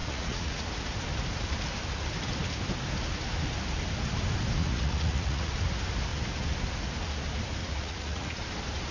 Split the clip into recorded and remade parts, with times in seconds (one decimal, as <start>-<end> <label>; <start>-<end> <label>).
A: 0.0-0.7 remade; 0.7-4.6 recorded; 4.6-5.5 remade; 5.5-7.6 recorded; 7.6-8.4 remade; 8.4-8.9 recorded

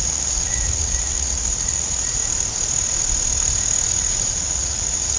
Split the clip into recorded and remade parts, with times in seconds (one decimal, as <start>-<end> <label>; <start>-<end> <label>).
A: 0.0-2.2 remade; 2.2-3.9 recorded; 3.9-5.2 remade

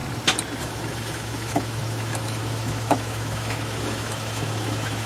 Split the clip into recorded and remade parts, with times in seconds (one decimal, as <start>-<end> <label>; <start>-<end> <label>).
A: 0.0-0.6 recorded; 0.6-5.1 remade

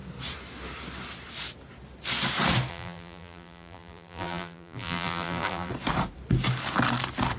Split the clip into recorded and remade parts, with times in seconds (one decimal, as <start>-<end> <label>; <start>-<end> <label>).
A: 0.0-2.7 recorded; 2.7-5.7 remade; 5.7-7.4 recorded

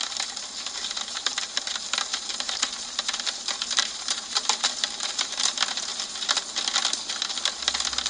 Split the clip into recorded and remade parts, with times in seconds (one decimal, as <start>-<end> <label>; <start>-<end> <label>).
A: 0.0-2.1 recorded; 2.1-5.4 remade; 5.4-8.1 recorded

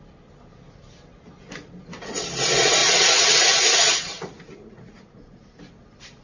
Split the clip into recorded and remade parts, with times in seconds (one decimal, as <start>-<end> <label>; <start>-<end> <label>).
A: 0.0-2.8 recorded; 2.8-5.6 remade; 5.6-6.2 recorded